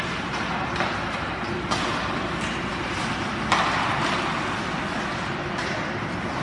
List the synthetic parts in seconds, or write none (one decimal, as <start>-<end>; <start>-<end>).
none